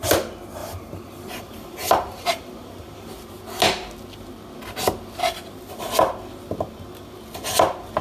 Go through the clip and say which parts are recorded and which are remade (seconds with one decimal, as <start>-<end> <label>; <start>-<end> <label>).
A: 0.0-0.6 recorded; 0.6-3.3 remade; 3.3-8.0 recorded